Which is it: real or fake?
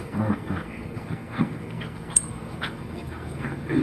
fake